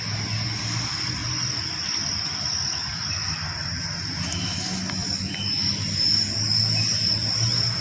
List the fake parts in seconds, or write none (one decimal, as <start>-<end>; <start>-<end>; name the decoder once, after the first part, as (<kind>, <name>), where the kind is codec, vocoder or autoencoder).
none